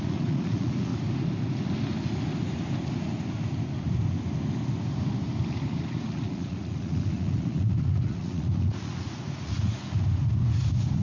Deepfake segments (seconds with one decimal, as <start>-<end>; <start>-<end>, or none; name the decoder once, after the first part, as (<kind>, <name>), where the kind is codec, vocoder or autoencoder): 0.0-0.9 (vocoder, Vocos); 5.7-9.8